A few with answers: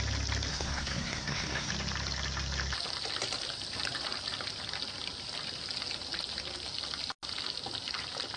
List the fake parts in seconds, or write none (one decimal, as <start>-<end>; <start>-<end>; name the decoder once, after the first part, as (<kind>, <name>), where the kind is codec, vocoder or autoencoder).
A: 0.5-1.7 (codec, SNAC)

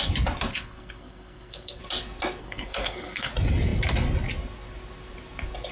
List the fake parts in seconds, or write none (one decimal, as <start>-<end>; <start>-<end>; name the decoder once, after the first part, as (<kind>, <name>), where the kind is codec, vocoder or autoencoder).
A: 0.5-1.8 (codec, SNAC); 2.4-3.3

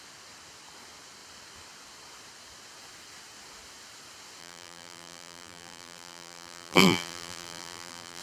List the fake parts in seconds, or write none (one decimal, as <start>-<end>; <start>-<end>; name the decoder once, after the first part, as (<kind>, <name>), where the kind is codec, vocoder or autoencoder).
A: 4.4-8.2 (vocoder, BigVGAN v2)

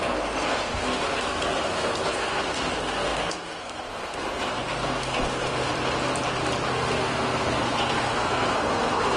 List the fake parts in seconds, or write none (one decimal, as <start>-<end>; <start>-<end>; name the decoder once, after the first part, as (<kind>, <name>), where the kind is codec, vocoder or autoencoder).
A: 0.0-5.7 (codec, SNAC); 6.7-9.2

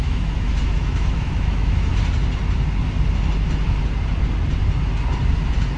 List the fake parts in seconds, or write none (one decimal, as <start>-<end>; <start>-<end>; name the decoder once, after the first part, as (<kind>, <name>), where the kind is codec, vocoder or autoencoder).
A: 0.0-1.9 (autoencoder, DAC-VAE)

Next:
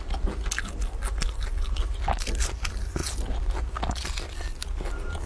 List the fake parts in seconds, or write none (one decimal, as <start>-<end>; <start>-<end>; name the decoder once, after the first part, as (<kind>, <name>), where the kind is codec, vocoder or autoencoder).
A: none

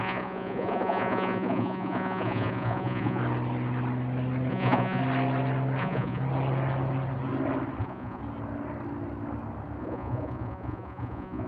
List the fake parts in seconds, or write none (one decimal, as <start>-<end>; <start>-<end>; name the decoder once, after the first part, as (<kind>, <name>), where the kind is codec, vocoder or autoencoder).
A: 0.0-3.2 (vocoder, Vocos); 4.5-5.0; 5.8-6.2; 7.8-8.2; 9.8-11.5